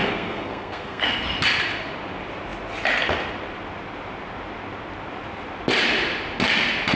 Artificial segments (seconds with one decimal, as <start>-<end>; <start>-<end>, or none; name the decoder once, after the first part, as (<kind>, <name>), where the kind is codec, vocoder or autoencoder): 0.0-1.0 (codec, SNAC)